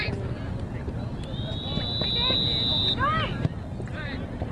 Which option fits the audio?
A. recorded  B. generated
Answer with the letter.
A